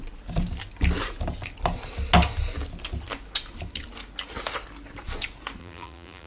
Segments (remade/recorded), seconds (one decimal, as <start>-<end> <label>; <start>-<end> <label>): 0.0-5.6 recorded; 5.6-6.3 remade